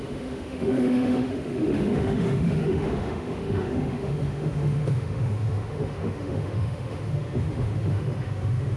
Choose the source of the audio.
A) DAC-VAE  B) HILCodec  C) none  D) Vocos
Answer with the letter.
A